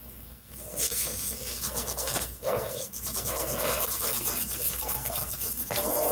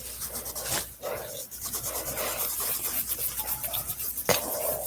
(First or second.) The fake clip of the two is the first